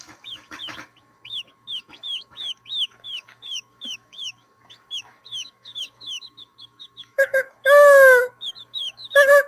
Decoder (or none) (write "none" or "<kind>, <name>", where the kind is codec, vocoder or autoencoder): codec, DAC